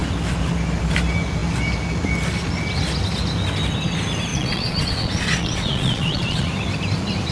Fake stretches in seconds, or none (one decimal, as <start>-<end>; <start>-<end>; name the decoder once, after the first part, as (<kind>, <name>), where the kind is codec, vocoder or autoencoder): 4.3-6.5 (vocoder, Vocos)